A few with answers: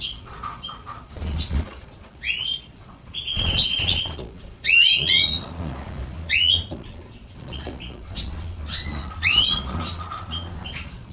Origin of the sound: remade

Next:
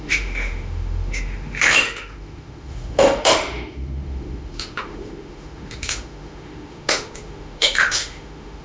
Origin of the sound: remade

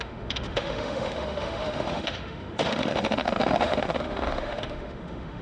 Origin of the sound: remade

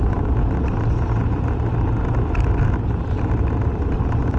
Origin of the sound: recorded